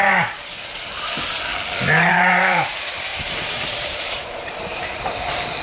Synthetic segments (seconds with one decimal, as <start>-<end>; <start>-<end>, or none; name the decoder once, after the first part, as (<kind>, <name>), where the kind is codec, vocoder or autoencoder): 0.0-1.5 (vocoder, BigVGAN v2); 2.1-5.6